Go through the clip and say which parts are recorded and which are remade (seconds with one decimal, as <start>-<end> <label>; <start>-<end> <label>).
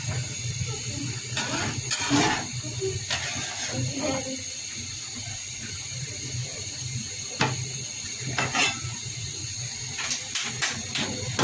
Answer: 0.0-11.4 recorded